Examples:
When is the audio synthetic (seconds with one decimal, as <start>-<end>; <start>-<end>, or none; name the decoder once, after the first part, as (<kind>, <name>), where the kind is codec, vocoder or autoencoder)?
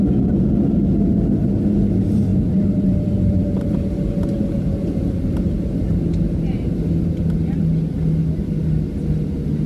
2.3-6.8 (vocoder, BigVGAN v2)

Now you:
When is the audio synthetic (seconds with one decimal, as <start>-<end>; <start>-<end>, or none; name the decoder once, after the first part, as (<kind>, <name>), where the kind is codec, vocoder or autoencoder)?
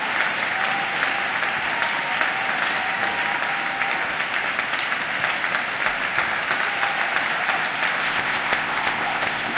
8.0-9.6 (codec, ZipCodec)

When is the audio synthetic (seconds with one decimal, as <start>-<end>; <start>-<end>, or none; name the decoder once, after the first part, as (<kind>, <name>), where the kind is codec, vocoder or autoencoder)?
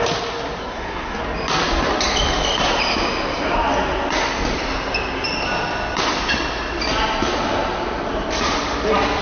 0.6-1.2 (codec, SNAC)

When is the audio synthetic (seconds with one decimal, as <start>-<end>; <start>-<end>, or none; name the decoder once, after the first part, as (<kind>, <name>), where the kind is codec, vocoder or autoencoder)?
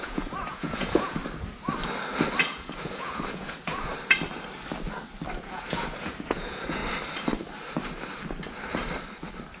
0.0-1.2 (vocoder, Vocos); 2.4-3.9; 5.4-6.8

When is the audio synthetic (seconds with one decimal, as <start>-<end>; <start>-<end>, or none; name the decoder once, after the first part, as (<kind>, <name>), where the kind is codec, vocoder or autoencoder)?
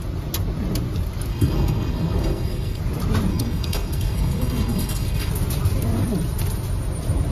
1.3-2.8 (codec, SNAC); 3.3-5.3